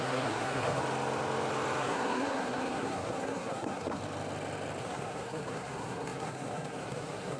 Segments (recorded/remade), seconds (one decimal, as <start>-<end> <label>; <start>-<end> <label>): 0.0-0.8 remade; 0.8-1.8 recorded; 1.8-4.0 remade; 4.0-4.8 recorded; 4.8-7.4 remade